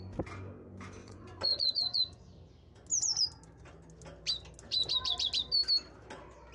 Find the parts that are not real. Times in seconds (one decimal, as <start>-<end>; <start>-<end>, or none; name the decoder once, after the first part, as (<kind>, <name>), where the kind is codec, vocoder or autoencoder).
1.0-2.2 (vocoder, Vocos)